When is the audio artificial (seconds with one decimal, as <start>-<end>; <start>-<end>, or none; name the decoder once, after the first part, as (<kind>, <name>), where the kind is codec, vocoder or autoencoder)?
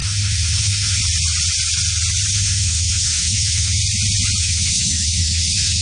0.0-1.0 (autoencoder, DAC-VAE); 2.3-3.8; 4.4-5.8